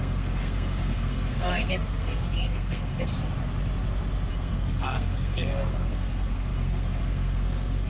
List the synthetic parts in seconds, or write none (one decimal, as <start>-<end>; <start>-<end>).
0.0-3.1; 4.3-7.9